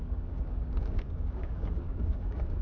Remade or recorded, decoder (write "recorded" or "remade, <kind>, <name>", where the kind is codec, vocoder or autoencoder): remade, codec, DAC